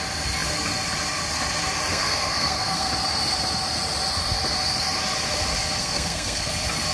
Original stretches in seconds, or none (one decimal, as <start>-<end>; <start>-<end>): 0.0-1.9; 2.9-5.8; 6.5-6.9

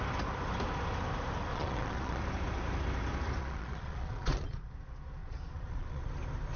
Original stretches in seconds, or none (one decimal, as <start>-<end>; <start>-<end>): 0.0-1.5; 2.2-3.4; 4.7-5.2; 6.1-6.6

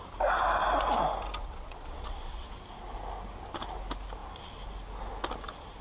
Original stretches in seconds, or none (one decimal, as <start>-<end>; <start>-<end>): 0.0-1.4; 2.5-5.8